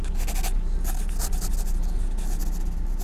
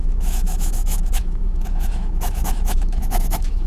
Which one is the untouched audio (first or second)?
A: first